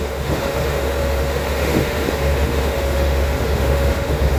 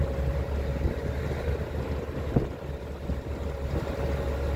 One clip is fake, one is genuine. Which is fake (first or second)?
first